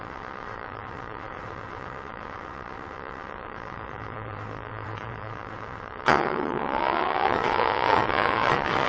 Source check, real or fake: fake